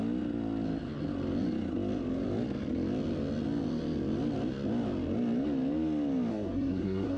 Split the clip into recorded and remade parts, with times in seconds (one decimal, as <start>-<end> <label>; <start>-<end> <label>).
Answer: 0.0-6.3 recorded; 6.3-7.2 remade